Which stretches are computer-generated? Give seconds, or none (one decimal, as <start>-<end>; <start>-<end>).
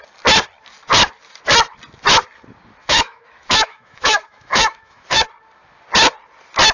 2.8-5.2